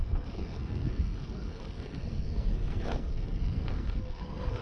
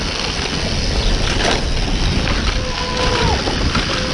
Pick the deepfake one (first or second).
first